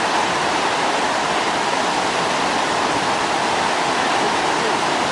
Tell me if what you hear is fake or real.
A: real